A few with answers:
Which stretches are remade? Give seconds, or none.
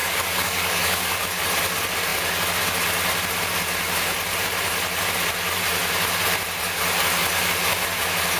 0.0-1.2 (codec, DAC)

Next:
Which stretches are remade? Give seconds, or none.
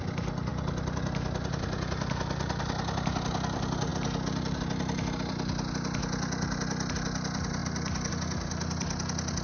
none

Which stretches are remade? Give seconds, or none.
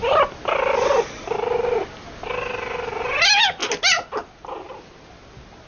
none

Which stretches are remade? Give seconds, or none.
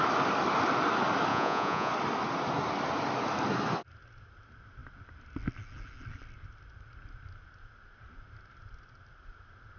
1.3-1.9 (vocoder, Vocos)